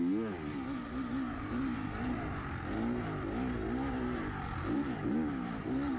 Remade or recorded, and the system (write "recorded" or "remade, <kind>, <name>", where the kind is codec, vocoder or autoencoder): recorded